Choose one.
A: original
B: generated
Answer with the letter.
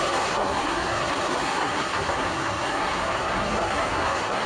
B